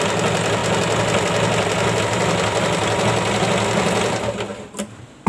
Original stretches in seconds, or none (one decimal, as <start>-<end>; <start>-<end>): 0.0-5.3